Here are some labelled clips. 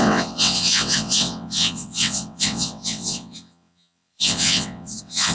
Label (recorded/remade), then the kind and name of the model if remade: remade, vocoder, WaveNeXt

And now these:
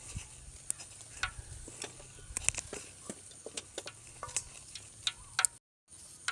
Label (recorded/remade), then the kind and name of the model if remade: recorded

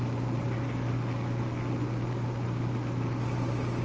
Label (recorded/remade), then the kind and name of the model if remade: recorded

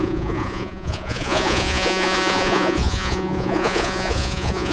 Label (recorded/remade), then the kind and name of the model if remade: remade, vocoder, Vocos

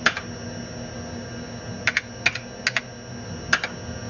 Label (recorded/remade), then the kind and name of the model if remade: recorded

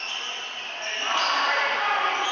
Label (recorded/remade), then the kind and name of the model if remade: recorded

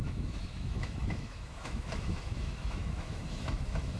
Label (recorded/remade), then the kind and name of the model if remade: remade, autoencoder, DAC-VAE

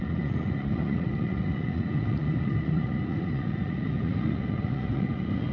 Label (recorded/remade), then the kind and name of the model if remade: remade, vocoder, Vocos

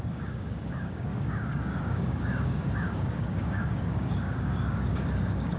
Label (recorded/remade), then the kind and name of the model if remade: remade, codec, DAC